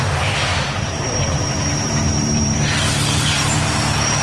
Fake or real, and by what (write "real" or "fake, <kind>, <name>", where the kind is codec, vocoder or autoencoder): fake, vocoder, BigVGAN v2